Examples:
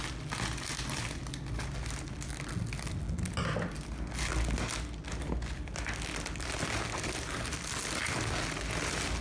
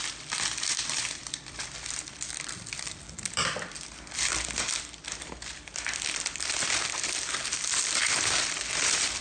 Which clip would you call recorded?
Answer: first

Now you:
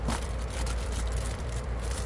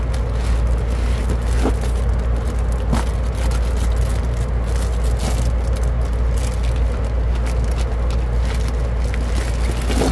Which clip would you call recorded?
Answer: second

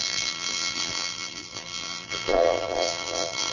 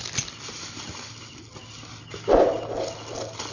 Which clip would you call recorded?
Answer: second